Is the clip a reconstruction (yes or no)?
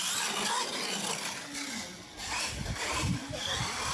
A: no